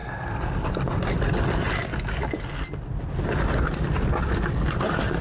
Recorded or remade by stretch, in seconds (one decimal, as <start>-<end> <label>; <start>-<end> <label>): 0.0-5.2 recorded